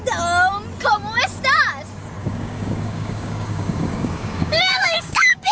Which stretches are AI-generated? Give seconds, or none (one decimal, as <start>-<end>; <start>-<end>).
2.2-5.5